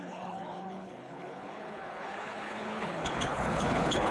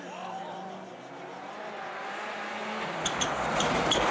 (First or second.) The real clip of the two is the second